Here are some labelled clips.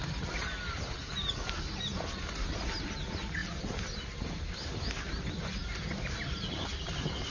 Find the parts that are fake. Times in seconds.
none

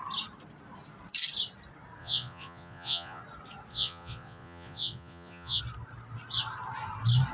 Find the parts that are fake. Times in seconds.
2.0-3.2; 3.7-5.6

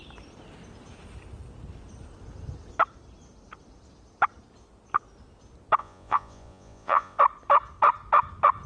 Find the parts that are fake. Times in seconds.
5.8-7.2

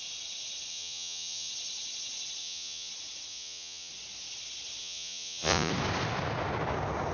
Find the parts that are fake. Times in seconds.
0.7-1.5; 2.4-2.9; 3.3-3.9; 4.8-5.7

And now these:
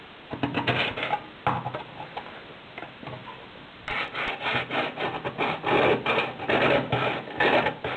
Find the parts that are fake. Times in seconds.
none